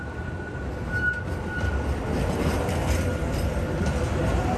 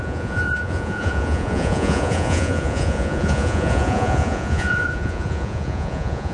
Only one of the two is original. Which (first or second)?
first